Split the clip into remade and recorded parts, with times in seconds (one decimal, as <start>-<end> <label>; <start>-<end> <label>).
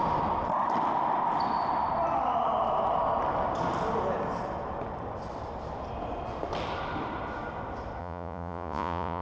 0.0-8.0 recorded; 8.0-9.2 remade